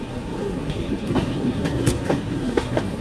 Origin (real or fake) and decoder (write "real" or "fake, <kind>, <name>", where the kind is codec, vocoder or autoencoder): fake, codec, SNAC